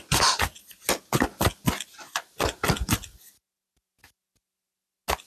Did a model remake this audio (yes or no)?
no